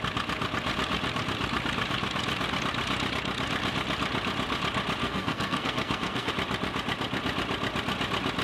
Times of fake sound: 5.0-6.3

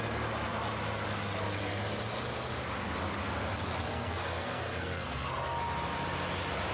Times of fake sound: 3.9-5.6